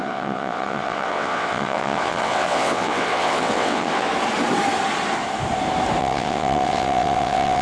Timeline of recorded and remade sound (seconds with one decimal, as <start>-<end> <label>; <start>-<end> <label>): 0.0-4.1 remade; 4.1-6.0 recorded; 6.0-7.6 remade